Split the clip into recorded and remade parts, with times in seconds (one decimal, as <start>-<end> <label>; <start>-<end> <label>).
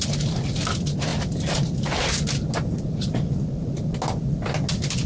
0.0-5.1 recorded